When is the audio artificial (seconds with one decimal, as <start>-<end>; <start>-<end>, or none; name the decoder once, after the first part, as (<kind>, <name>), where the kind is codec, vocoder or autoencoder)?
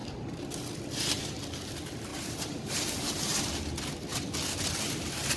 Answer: 0.0-1.4 (vocoder, BigVGAN v2); 2.1-3.5